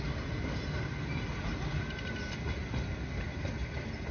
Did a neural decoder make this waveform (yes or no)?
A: no